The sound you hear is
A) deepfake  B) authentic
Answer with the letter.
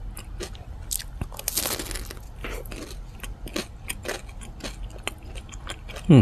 B